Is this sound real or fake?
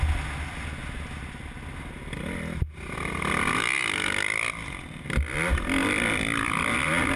real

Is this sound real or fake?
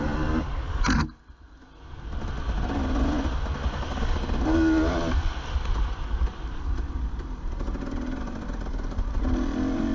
real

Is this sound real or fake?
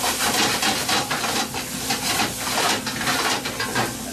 real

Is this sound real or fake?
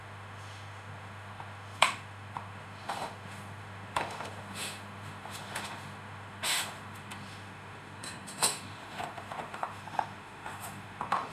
fake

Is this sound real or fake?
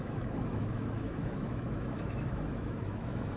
fake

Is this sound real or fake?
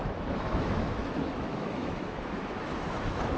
fake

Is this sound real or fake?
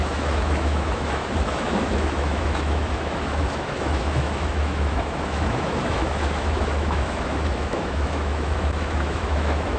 fake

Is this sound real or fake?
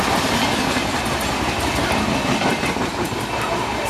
real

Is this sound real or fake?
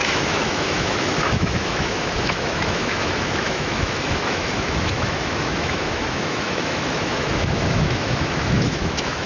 fake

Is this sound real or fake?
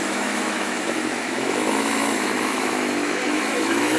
fake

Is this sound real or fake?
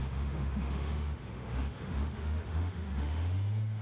fake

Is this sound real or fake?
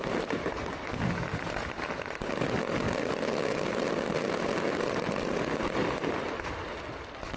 real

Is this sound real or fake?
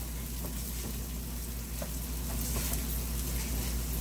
real